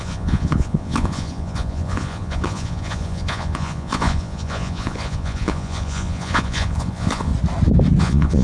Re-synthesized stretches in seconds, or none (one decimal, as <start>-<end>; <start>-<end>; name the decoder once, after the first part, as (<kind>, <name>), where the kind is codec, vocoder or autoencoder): 0.0-7.3 (vocoder, Vocos); 8.0-8.4